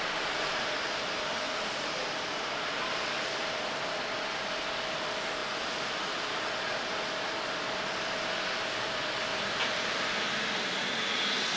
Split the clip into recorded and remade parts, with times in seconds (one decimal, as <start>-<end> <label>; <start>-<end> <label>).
0.0-1.3 recorded; 1.3-4.9 remade; 4.9-9.3 recorded; 9.3-10.9 remade; 10.9-11.6 recorded